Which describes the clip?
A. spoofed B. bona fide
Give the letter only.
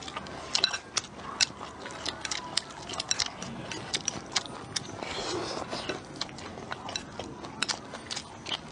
B